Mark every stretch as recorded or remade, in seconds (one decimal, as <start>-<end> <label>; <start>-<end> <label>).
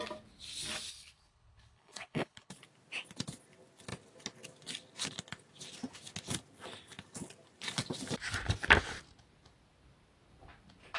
0.0-0.9 recorded; 0.9-2.5 remade; 2.5-11.0 recorded